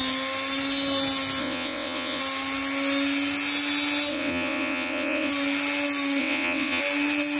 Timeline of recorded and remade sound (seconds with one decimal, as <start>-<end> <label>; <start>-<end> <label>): 0.0-1.4 recorded; 1.4-2.2 remade; 2.2-4.1 recorded; 4.1-5.3 remade; 5.3-6.2 recorded; 6.2-6.8 remade; 6.8-7.4 recorded